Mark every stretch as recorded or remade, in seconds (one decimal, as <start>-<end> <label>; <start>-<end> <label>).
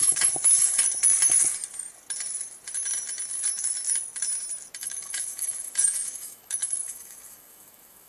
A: 0.0-0.7 remade; 0.7-4.8 recorded; 4.8-8.1 remade